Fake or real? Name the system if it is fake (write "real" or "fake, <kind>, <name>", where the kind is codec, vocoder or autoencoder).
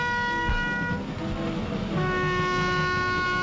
real